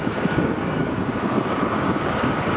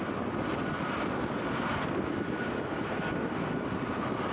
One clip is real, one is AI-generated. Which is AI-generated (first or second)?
first